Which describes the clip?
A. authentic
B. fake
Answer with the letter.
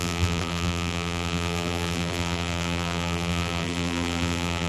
B